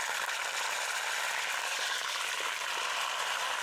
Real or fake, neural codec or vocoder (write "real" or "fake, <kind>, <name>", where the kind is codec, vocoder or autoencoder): real